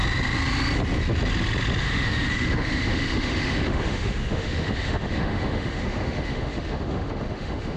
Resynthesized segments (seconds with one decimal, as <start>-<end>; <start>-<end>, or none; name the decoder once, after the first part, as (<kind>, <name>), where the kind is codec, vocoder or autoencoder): 1.8-7.8 (autoencoder, DAC-VAE)